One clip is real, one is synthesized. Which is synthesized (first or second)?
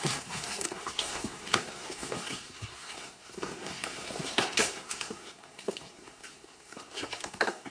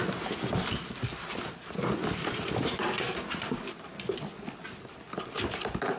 first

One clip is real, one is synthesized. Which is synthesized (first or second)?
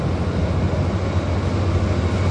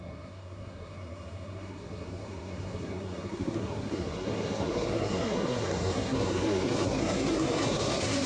second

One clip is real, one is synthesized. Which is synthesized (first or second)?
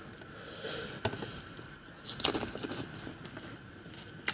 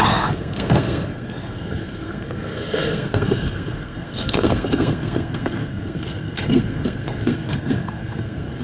second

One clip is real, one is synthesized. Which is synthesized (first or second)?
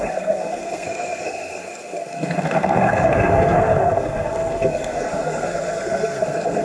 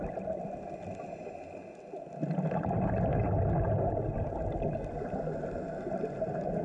first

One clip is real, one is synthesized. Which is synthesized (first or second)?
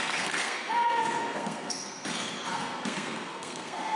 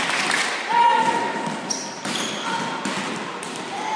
first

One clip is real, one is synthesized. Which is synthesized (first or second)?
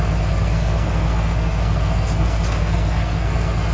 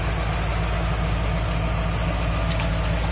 first